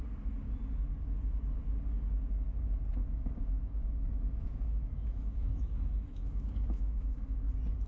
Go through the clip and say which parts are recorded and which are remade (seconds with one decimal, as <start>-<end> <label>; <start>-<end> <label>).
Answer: 0.0-3.0 recorded; 3.0-7.5 remade; 7.5-7.9 recorded